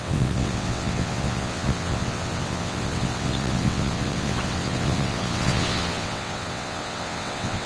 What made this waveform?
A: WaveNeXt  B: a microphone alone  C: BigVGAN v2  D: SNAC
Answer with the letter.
A